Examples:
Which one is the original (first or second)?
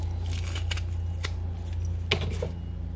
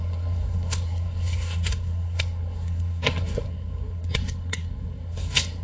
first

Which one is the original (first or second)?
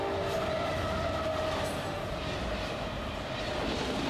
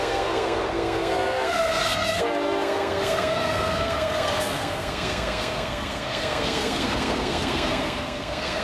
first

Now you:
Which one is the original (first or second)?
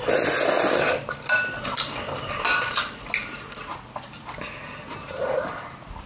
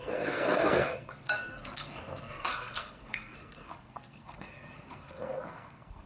first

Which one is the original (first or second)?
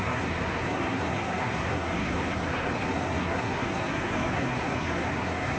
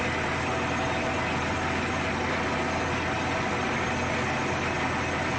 second